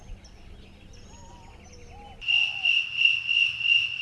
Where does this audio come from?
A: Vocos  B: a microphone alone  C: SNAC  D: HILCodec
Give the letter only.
B